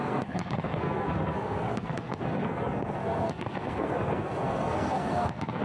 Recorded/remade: remade